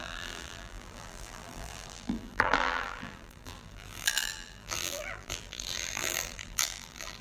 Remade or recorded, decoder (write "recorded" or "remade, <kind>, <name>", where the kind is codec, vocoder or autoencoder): remade, vocoder, BigVGAN v2